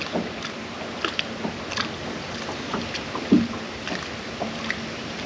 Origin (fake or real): real